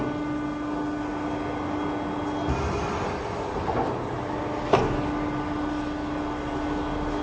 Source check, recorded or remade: recorded